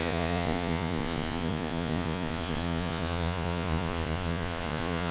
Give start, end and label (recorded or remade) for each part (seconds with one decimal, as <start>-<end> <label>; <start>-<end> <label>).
0.0-5.1 remade